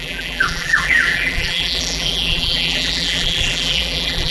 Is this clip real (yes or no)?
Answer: no